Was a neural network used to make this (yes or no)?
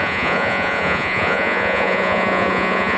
yes